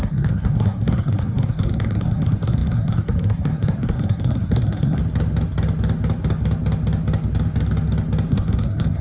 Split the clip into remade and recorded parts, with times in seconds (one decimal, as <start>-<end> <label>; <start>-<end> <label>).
0.0-5.0 remade; 5.0-8.3 recorded; 8.3-9.0 remade